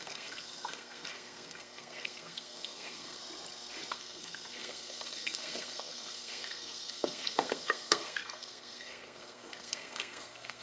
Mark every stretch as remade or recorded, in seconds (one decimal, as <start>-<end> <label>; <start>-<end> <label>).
0.0-3.2 remade; 3.2-3.9 recorded; 3.9-10.6 remade